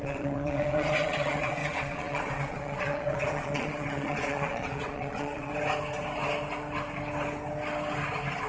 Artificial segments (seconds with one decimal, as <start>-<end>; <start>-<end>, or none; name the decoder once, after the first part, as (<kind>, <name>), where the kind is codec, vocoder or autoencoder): 0.0-5.5 (vocoder, Vocos)